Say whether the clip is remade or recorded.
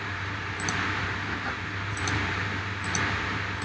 remade